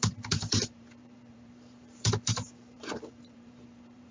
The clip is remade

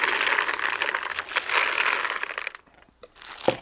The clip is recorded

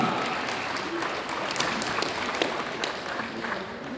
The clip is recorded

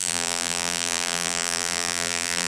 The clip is remade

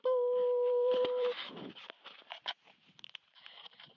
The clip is remade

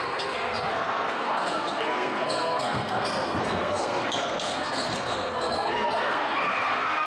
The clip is remade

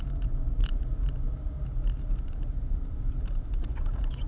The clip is remade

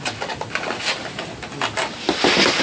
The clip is recorded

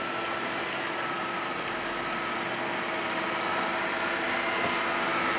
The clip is recorded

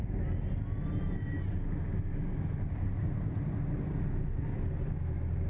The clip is recorded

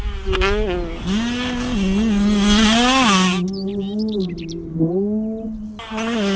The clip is recorded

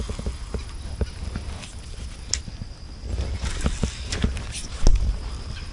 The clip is recorded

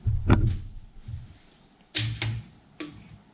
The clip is recorded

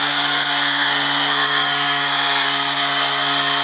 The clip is remade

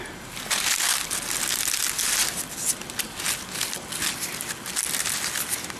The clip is recorded